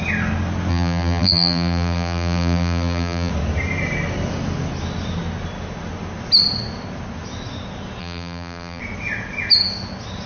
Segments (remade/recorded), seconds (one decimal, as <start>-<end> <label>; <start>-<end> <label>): 0.0-0.7 recorded; 0.7-3.3 remade; 3.3-8.0 recorded; 8.0-8.8 remade; 8.8-10.3 recorded